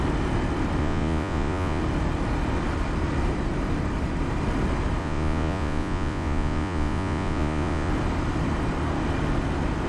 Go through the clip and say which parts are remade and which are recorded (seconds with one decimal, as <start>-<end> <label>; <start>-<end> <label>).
0.0-0.8 recorded; 0.8-1.8 remade; 1.8-5.0 recorded; 5.0-7.9 remade; 7.9-9.9 recorded